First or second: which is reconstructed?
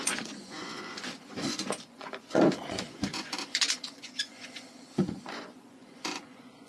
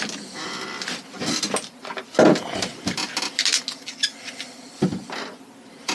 first